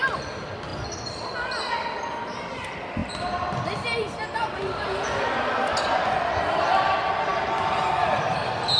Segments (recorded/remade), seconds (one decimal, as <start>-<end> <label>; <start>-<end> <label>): 0.0-8.8 recorded